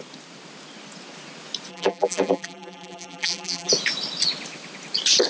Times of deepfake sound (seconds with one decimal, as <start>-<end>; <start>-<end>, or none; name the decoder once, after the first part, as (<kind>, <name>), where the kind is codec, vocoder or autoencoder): 1.7-3.7 (vocoder, BigVGAN v2)